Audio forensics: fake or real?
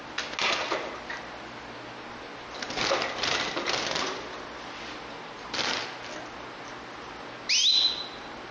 real